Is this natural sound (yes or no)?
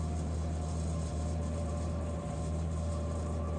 no